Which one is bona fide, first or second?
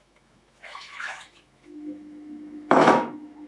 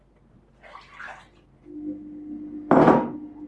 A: second